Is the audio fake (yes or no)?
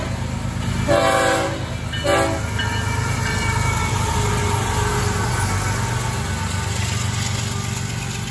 no